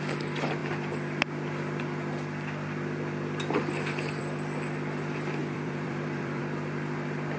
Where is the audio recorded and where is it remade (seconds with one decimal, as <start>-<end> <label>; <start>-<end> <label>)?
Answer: 0.0-5.4 recorded; 5.4-6.4 remade; 6.4-7.4 recorded